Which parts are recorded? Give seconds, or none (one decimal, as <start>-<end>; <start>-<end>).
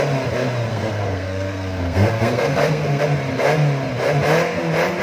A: 0.0-0.7; 3.0-5.0